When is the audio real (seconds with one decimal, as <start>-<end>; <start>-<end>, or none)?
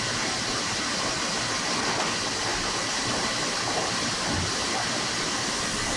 0.0-0.5; 1.2-2.5; 5.1-6.0